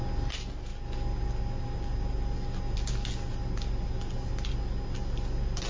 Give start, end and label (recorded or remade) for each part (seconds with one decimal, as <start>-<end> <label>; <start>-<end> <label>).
0.0-5.7 recorded

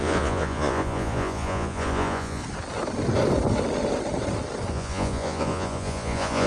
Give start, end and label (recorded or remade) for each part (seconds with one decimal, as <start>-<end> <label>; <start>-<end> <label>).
0.0-2.4 remade; 2.4-4.7 recorded; 4.7-6.5 remade

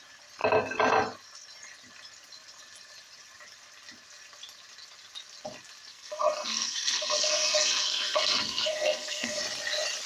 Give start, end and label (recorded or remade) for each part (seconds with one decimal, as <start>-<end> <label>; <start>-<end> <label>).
0.0-5.9 recorded; 5.9-9.4 remade; 9.4-10.1 recorded

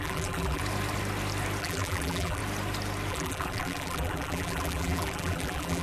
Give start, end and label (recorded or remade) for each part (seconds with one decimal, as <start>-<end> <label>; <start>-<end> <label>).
0.0-0.6 remade; 0.6-1.6 recorded; 1.6-2.4 remade; 2.4-3.1 recorded; 3.1-5.8 remade